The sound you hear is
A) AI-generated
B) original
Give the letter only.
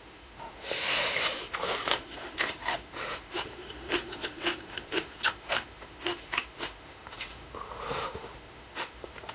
A